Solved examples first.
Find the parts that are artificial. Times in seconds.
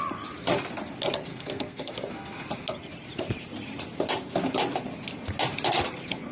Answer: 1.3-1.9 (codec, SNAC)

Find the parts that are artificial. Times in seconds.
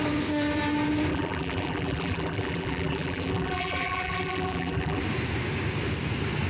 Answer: 1.1-5.0 (vocoder, BigVGAN v2)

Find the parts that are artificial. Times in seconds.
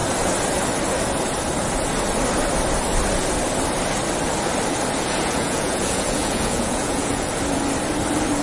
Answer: 5.0-7.3 (vocoder, Vocos)